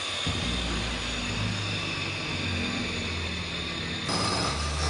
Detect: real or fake real